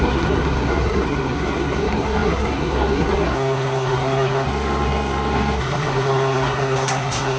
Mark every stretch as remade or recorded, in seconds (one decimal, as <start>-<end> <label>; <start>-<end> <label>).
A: 0.0-7.4 remade